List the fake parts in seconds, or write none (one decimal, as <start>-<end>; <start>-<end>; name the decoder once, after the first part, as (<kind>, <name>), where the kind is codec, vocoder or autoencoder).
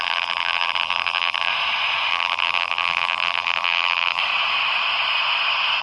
0.0-1.5 (vocoder, BigVGAN v2); 2.1-4.2